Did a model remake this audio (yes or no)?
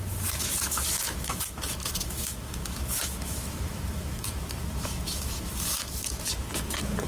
yes